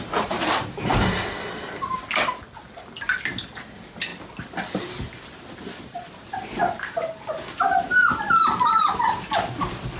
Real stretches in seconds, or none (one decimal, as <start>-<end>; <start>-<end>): 0.0-10.0